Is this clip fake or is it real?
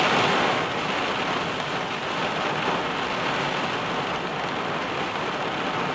real